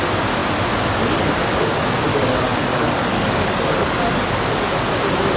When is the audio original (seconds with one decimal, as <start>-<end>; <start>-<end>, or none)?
0.0-2.1; 4.0-5.4